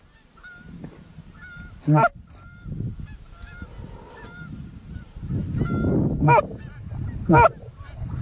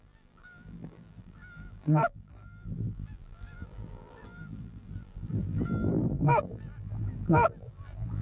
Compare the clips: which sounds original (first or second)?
first